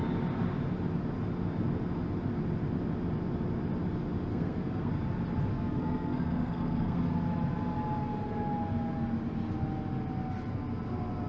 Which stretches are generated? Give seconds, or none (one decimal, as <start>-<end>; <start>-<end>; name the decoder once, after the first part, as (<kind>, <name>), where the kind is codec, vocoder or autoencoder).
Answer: 4.3-4.9 (codec, SNAC); 5.5-7.0